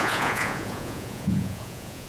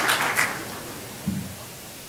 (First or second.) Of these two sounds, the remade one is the first